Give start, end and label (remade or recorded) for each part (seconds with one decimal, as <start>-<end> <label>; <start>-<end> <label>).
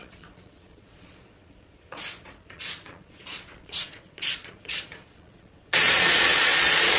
0.0-7.0 remade